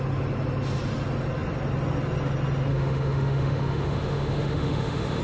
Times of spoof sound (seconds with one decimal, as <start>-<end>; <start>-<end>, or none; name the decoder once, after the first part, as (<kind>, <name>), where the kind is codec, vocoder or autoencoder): 2.7-5.2 (autoencoder, DAC-VAE)